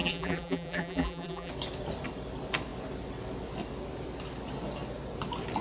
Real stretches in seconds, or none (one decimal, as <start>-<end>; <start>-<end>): 1.5-5.6

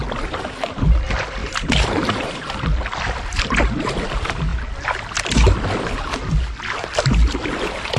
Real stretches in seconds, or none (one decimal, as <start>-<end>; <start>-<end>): 0.0-1.4; 2.5-8.0